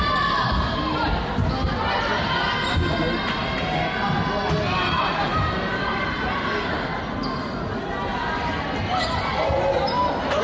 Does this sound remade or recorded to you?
recorded